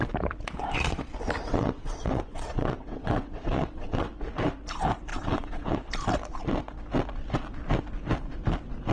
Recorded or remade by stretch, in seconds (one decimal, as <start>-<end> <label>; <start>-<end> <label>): 0.0-1.5 recorded; 1.5-4.1 remade; 4.1-5.1 recorded; 5.1-5.9 remade; 5.9-8.9 recorded

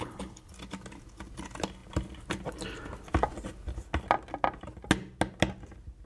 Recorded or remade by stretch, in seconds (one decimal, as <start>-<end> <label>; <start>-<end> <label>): 0.0-0.5 remade; 0.5-6.1 recorded

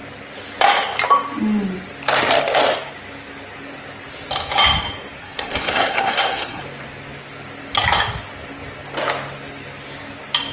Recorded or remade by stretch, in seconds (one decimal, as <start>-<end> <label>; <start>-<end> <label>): 0.0-5.2 recorded; 5.2-6.6 remade; 6.6-10.5 recorded

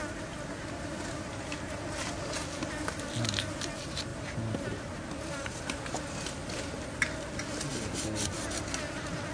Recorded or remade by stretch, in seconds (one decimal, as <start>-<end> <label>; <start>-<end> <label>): 0.0-9.3 recorded

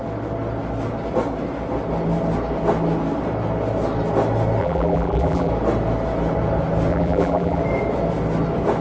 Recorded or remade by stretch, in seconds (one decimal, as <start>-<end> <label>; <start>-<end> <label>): 0.0-4.6 recorded; 4.6-5.5 remade; 5.5-6.9 recorded; 6.9-7.6 remade; 7.6-8.8 recorded

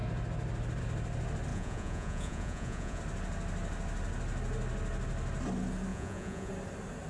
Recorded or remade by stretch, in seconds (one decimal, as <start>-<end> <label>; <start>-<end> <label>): 0.0-1.5 recorded; 1.5-3.0 remade; 3.0-5.9 recorded; 5.9-6.5 remade; 6.5-7.1 recorded

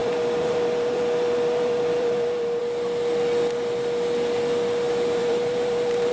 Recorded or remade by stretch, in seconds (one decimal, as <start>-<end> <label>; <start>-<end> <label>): 0.0-2.6 remade; 2.6-5.2 recorded; 5.2-6.1 remade

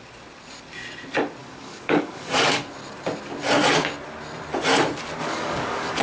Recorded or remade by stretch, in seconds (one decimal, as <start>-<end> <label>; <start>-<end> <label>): 0.0-1.4 recorded; 1.4-2.6 remade; 2.6-5.2 recorded; 5.2-6.0 remade